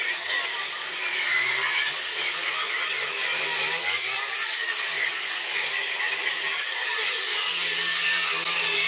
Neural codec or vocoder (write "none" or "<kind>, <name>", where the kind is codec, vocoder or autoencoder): codec, DAC